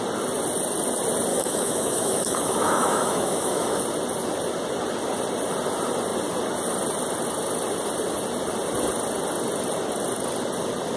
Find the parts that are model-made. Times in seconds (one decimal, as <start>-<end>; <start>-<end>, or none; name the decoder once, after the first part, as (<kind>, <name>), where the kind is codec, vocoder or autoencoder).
1.3-3.8 (autoencoder, DAC-VAE)